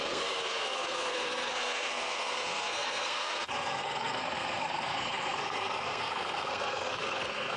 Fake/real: fake